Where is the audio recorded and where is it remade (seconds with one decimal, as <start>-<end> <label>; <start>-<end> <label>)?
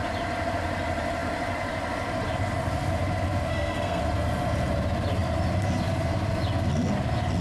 0.0-3.5 recorded; 3.5-4.0 remade; 4.0-7.4 recorded